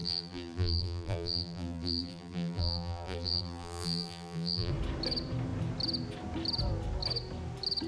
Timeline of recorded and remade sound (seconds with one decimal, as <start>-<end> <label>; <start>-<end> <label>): 0.0-4.7 remade; 4.7-7.9 recorded